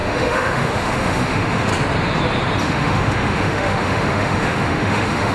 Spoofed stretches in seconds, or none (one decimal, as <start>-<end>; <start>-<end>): 0.0-1.7; 2.6-5.3